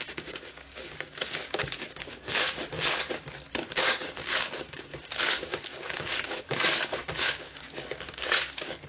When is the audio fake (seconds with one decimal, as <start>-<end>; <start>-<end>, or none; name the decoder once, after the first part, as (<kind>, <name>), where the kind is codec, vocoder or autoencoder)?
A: 0.0-2.7 (codec, DAC); 3.7-8.9